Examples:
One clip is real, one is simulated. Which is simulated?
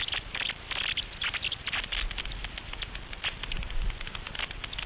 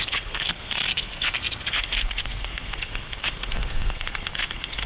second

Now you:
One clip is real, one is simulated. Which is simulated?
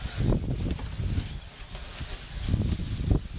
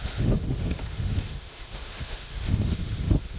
second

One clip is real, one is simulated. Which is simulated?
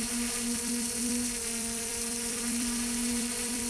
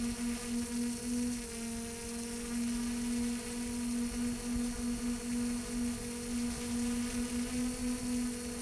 first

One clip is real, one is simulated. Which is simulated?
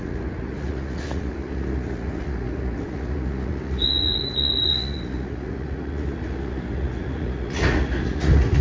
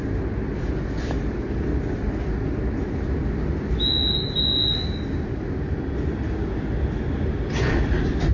first